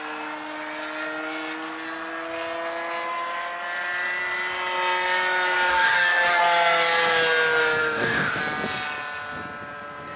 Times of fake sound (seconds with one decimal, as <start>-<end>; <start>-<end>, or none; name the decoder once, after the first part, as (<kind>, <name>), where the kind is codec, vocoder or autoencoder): 5.7-6.4 (codec, DAC); 7.8-8.4